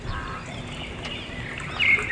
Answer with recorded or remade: recorded